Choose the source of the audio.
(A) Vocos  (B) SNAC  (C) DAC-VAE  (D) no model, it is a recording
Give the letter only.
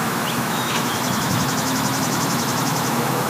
C